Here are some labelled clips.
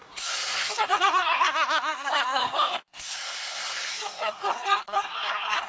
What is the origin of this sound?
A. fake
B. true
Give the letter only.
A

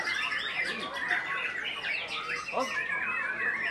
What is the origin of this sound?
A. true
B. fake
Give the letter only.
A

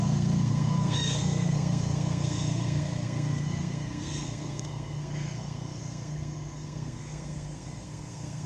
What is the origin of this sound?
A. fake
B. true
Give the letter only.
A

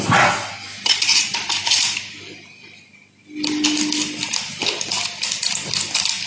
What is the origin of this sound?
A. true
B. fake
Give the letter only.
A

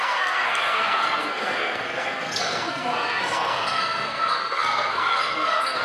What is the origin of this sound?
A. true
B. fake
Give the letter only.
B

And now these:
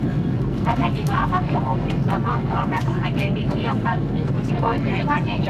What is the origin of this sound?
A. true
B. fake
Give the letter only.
B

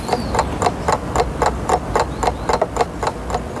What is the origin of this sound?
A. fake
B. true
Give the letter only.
B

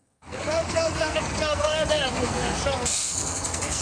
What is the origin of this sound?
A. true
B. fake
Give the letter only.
B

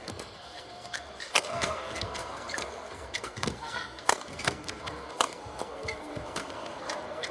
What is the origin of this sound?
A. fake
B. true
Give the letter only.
A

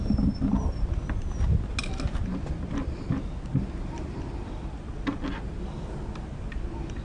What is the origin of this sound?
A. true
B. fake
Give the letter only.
A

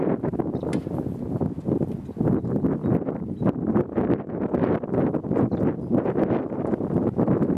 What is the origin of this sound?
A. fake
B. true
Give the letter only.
B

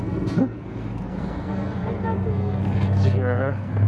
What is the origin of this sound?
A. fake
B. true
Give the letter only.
A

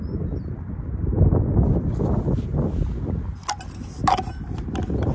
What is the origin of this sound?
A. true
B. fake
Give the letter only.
A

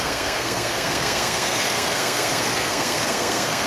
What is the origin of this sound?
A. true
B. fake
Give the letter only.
B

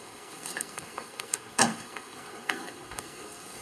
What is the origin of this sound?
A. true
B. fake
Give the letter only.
B